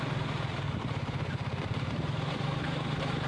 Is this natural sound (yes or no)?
no